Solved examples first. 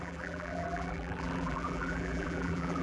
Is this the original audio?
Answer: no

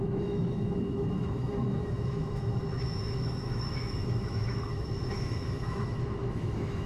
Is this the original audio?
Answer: no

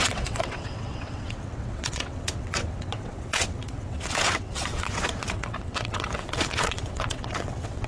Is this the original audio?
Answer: no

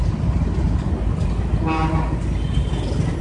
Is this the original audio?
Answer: yes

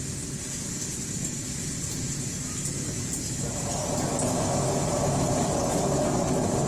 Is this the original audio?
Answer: yes